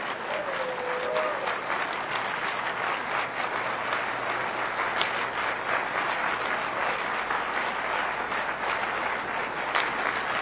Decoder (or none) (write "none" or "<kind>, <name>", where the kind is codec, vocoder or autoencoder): none